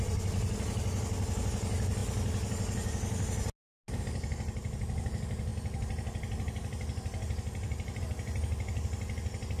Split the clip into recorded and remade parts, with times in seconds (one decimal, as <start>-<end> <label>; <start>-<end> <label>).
0.0-9.6 recorded